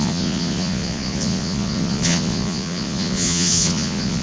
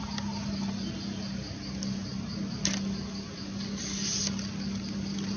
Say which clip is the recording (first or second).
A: second